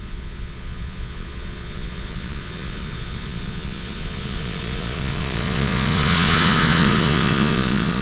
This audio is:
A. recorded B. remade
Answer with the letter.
B